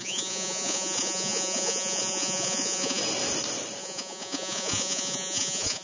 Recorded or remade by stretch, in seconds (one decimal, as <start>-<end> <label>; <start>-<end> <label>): 0.0-3.0 remade; 3.0-3.8 recorded; 3.8-5.8 remade